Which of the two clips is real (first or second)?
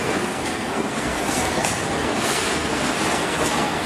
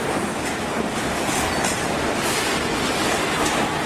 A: second